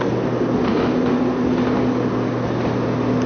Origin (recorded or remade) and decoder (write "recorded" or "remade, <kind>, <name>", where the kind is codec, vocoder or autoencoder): recorded